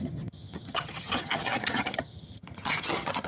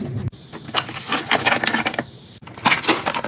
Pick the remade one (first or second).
first